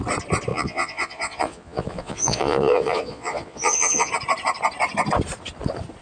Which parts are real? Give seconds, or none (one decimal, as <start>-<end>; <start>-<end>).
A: 0.0-0.5; 4.1-6.0